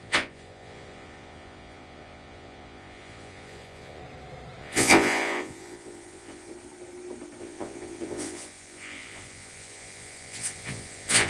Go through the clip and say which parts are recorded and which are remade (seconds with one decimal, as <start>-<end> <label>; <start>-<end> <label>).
0.0-4.0 remade; 4.0-4.6 recorded; 4.6-6.5 remade; 6.5-7.4 recorded; 7.4-11.3 remade